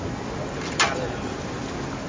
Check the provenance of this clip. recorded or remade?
recorded